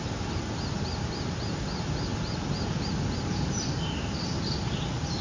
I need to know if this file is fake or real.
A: real